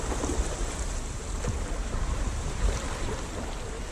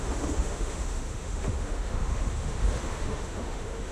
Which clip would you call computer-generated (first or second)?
second